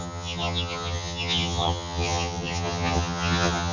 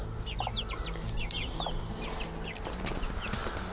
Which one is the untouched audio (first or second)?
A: second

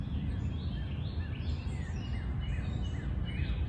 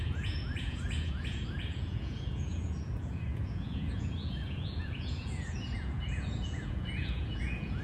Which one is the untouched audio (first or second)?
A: first